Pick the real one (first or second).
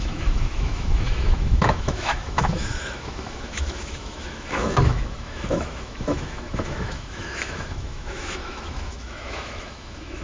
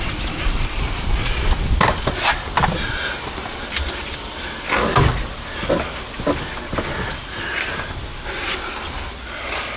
second